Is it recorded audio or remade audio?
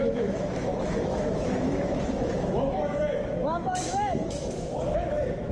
remade